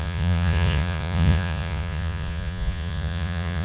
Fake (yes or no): yes